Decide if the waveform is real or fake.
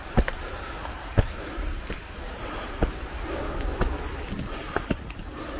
real